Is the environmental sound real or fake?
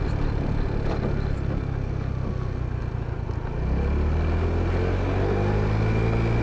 real